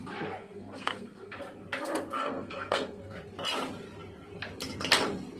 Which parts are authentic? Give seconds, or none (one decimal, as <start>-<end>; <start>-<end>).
0.0-0.4; 1.4-1.8; 3.2-5.4